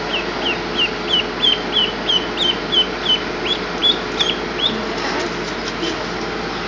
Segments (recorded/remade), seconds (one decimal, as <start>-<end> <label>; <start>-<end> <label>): 0.0-6.7 recorded